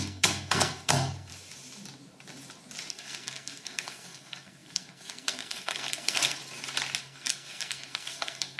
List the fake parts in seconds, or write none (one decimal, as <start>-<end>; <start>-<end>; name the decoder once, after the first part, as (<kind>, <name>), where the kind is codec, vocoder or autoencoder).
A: 0.0-1.3 (codec, SNAC); 2.9-6.4; 7.0-8.6